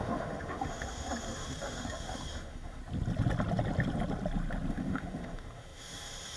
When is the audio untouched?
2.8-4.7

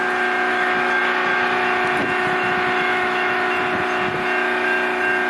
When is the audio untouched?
0.0-0.5; 1.0-2.9; 3.5-5.3

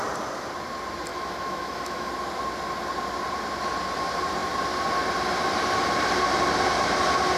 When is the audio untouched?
0.0-1.1; 2.1-7.4

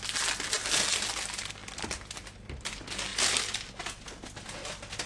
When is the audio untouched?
0.0-5.1

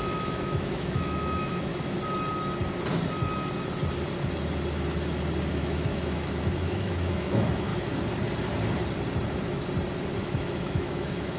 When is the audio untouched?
1.7-5.5; 7.7-10.2